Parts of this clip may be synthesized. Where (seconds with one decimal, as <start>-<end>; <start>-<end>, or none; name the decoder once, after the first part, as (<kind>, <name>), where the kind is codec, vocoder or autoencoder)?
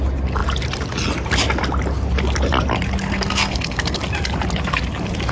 3.1-4.0 (codec, SNAC)